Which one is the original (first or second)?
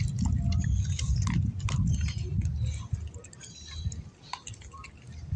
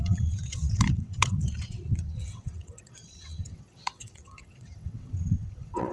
first